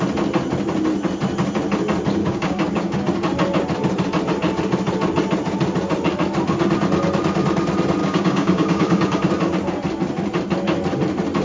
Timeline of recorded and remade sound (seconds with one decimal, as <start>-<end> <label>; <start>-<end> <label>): 0.0-2.2 recorded; 2.2-3.0 remade; 3.0-8.0 recorded; 8.0-9.3 remade; 9.3-11.4 recorded